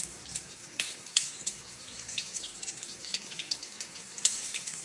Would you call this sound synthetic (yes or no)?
yes